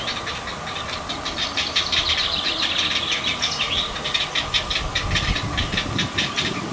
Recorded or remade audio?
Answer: recorded